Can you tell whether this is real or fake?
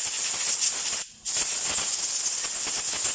real